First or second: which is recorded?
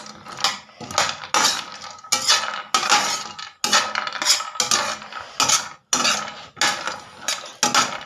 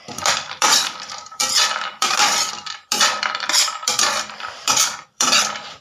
first